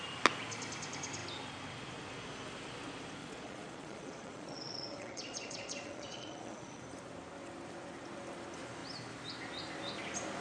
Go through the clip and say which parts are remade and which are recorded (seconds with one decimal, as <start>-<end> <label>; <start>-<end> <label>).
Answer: 0.0-3.2 recorded; 3.2-6.8 remade; 6.8-10.4 recorded